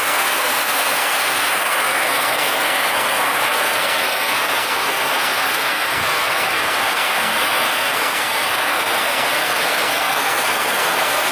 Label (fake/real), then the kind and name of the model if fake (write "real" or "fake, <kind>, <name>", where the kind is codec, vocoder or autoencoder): fake, codec, SNAC